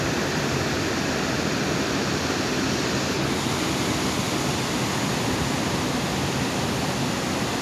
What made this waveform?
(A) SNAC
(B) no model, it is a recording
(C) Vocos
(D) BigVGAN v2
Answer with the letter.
B